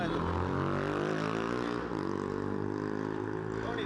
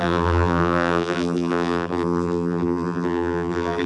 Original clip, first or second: first